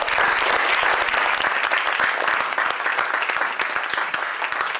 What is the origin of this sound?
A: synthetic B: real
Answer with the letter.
B